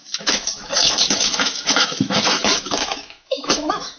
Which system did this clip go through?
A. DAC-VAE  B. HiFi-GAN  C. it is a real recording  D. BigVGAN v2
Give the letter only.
A